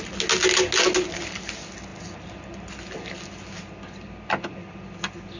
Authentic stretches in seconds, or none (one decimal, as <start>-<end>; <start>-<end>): 0.0-5.4